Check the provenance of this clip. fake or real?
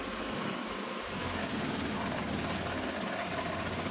real